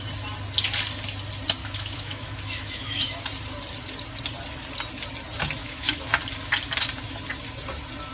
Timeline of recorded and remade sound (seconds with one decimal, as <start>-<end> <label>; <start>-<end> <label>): 0.0-1.6 recorded; 1.6-3.2 remade; 3.2-5.6 recorded; 5.6-6.1 remade; 6.1-8.1 recorded